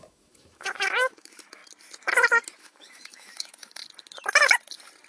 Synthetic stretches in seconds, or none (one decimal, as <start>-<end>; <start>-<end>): 0.0-1.6; 2.6-3.8